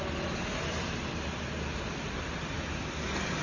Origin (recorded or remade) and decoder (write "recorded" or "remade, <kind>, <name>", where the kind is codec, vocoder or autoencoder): recorded